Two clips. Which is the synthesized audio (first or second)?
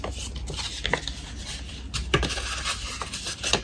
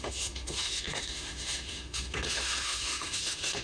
second